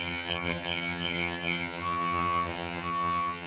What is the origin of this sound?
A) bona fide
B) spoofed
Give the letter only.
B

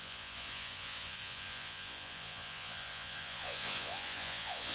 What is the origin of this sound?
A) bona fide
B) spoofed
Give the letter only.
B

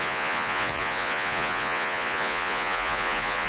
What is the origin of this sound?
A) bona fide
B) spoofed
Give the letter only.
B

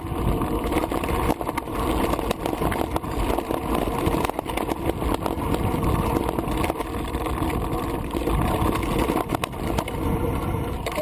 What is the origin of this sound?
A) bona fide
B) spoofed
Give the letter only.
A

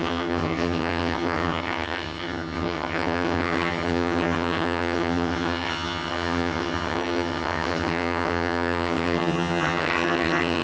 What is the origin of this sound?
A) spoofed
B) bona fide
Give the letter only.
A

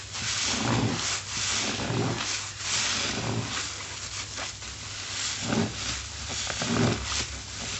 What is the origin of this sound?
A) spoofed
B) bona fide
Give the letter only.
B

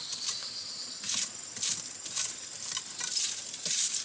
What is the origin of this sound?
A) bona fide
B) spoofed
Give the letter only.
A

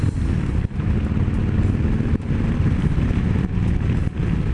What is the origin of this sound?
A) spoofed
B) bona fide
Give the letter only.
B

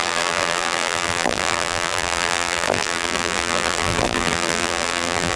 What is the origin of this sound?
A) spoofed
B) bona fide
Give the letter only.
A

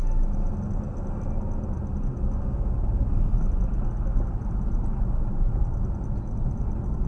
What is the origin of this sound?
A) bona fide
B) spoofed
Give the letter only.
A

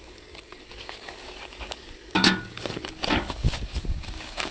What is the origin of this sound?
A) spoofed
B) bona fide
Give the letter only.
A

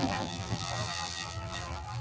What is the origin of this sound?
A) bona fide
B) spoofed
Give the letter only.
B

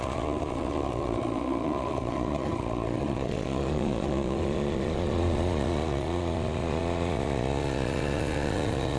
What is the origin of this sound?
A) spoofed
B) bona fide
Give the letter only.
A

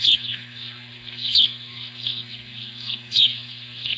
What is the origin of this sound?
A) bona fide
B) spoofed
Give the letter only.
B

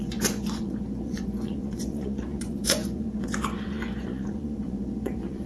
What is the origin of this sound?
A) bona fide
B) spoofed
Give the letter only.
B